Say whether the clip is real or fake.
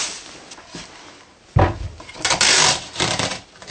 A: real